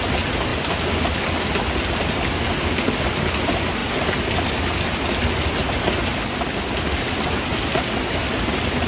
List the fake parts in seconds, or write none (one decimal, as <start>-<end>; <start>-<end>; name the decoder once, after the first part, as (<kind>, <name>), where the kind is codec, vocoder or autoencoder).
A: none